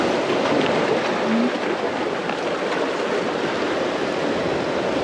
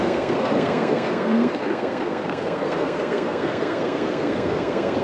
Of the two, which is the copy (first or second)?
second